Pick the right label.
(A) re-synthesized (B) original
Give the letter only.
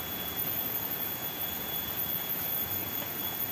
A